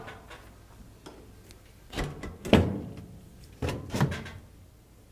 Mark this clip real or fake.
real